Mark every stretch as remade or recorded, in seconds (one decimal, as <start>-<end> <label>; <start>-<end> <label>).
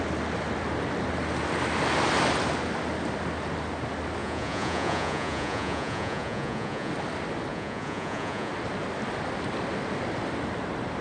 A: 0.0-4.2 recorded; 4.2-6.9 remade; 6.9-7.5 recorded; 7.5-8.5 remade; 8.5-11.0 recorded